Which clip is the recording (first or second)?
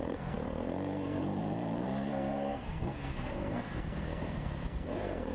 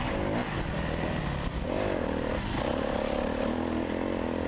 second